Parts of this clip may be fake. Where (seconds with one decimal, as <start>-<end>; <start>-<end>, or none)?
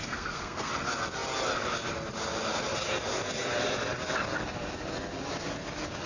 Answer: 0.0-0.7